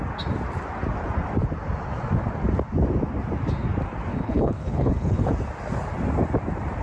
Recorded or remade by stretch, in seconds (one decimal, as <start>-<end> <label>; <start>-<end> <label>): 0.0-4.1 recorded; 4.1-5.3 remade; 5.3-6.8 recorded